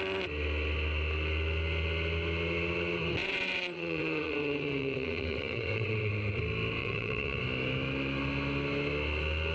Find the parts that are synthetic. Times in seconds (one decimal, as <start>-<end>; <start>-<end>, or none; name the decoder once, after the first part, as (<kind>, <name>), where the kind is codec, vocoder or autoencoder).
3.2-6.1 (vocoder, WaveNeXt); 6.8-7.4